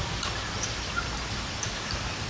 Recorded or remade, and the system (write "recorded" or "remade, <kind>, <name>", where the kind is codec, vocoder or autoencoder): recorded